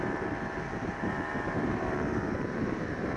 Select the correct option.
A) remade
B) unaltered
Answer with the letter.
A